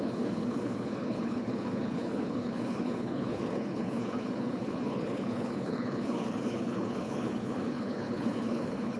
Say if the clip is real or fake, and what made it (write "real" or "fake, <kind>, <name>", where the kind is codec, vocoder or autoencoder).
fake, codec, HILCodec